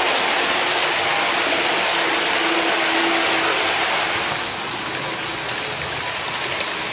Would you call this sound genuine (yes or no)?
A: yes